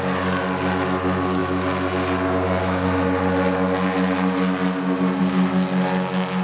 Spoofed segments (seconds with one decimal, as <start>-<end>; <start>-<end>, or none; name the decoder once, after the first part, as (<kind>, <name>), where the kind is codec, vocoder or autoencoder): none